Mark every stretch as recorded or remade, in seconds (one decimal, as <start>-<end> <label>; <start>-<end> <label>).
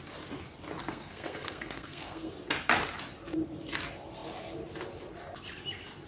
0.0-0.8 recorded; 0.8-2.3 remade; 2.3-6.1 recorded